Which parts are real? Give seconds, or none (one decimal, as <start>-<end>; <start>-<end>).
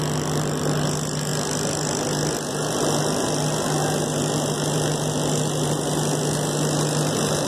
0.0-7.5